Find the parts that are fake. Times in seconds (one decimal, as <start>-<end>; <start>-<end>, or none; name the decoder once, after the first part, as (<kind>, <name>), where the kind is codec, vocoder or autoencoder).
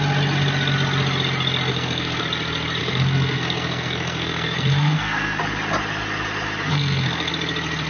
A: 1.7-2.2 (codec, SNAC); 2.8-5.4; 6.7-7.3